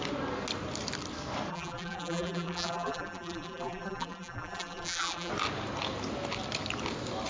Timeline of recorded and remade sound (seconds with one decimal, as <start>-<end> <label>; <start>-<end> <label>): 0.0-1.5 recorded; 1.5-5.3 remade; 5.3-7.3 recorded